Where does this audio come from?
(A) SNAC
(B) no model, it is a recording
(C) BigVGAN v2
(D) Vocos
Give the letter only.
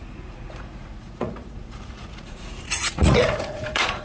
D